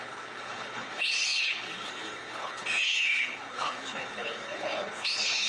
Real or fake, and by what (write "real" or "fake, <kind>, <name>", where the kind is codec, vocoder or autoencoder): fake, codec, HILCodec